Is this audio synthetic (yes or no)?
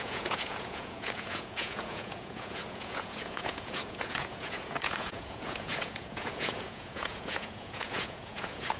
yes